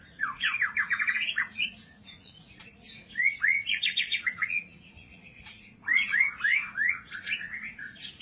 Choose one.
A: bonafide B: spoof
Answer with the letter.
B